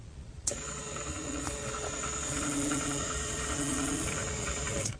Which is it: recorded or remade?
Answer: remade